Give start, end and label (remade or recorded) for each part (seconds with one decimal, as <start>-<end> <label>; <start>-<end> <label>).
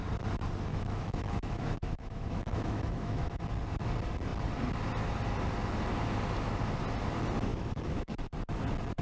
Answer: 0.0-0.7 recorded; 0.7-3.4 remade; 3.4-7.5 recorded; 7.5-8.1 remade; 8.1-9.0 recorded